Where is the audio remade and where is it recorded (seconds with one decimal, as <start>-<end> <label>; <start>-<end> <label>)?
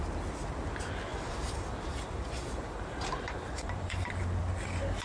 0.0-1.1 recorded; 1.1-4.1 remade; 4.1-5.0 recorded